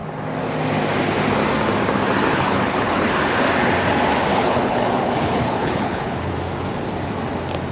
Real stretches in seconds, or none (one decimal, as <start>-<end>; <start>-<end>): 0.0-2.3; 3.1-4.3; 6.3-7.7

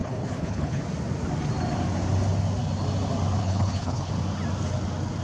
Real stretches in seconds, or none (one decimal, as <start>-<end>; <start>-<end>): 0.8-3.4; 4.1-5.2

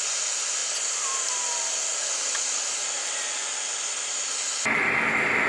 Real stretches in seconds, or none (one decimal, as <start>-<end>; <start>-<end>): 0.0-5.5

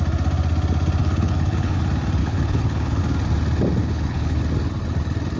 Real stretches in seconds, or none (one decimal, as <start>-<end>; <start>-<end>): 0.0-1.0; 1.8-2.2; 3.0-3.8; 4.4-5.4

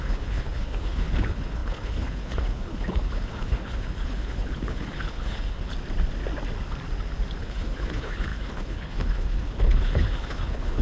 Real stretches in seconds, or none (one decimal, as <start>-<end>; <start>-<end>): 5.7-7.4